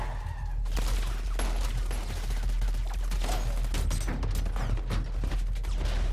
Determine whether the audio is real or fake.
real